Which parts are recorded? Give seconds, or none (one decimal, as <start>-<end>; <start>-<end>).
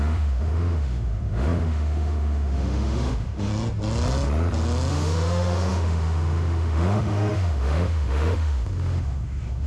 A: 3.5-4.9